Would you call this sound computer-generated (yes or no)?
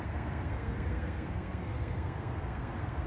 yes